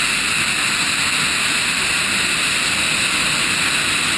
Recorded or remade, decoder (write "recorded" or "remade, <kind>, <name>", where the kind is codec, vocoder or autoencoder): recorded